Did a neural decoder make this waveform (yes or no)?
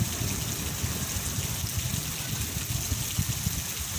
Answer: no